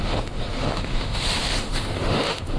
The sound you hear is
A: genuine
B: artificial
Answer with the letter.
B